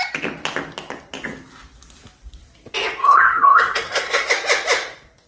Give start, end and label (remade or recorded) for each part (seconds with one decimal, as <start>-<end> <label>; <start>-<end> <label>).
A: 0.0-3.0 recorded; 3.0-4.3 remade; 4.3-5.3 recorded

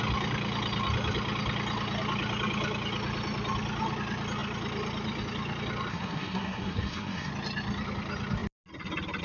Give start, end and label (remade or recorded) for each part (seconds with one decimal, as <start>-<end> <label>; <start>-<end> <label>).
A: 0.0-5.9 recorded; 5.9-7.3 remade; 7.3-9.2 recorded

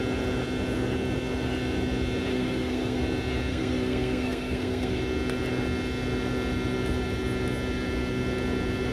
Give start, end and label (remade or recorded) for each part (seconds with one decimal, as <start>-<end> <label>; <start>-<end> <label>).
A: 0.0-2.3 recorded; 2.3-3.0 remade; 3.0-3.5 recorded; 3.5-5.0 remade; 5.0-8.9 recorded

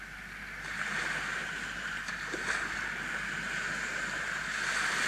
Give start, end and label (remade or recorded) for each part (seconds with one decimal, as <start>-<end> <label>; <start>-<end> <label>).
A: 0.0-5.1 recorded

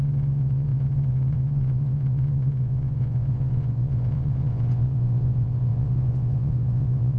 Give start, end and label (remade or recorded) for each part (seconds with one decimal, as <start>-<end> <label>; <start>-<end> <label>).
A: 0.0-7.2 remade

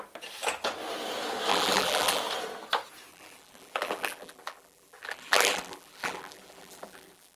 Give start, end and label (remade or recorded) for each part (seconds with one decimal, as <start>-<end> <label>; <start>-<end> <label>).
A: 0.0-1.5 recorded; 1.5-2.2 remade; 2.2-3.1 recorded; 3.1-7.4 remade

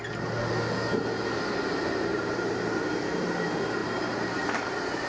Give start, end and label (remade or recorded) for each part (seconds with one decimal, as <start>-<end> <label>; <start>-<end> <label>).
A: 0.0-2.1 recorded; 2.1-2.8 remade; 2.8-3.8 recorded; 3.8-5.1 remade

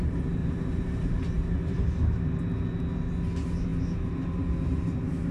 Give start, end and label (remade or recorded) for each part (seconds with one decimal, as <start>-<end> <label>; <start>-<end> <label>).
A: 0.0-0.4 recorded; 0.4-1.8 remade; 1.8-5.3 recorded